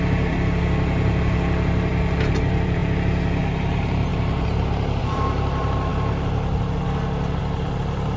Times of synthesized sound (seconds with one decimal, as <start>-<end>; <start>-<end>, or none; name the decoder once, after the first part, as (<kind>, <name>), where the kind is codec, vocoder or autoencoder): 0.0-1.9 (vocoder, BigVGAN v2); 2.4-4.1; 5.0-5.9; 7.4-8.2